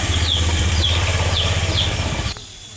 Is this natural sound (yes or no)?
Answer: no